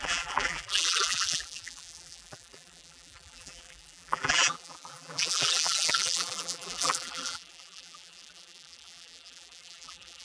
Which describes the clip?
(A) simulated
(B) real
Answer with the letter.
A